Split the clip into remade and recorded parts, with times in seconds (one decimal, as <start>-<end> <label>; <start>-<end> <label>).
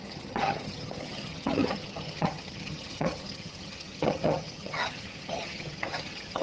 0.0-6.4 remade